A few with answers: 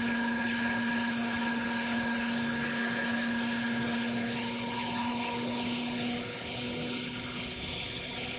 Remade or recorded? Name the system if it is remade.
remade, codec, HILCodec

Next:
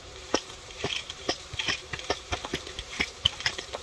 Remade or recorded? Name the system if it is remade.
remade, vocoder, BigVGAN v2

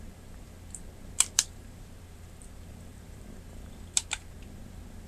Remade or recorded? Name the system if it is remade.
remade, vocoder, BigVGAN v2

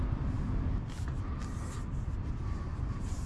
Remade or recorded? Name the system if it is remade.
recorded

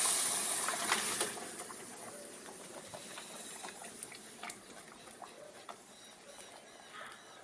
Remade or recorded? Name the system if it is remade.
recorded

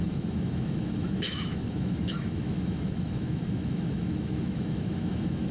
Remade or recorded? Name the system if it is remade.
remade, autoencoder, DAC-VAE